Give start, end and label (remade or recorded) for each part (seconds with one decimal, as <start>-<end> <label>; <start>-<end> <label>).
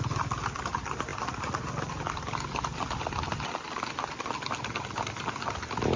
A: 0.0-6.0 recorded